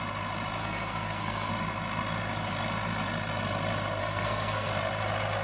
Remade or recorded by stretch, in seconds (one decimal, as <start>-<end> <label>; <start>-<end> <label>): 0.0-0.6 recorded; 0.6-1.5 remade; 1.5-4.0 recorded; 4.0-4.7 remade; 4.7-5.4 recorded